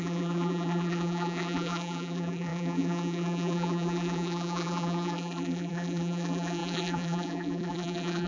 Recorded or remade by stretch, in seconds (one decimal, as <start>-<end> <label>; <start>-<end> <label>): 0.0-8.3 remade